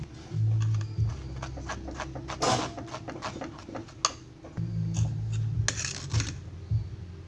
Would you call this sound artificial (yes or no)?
no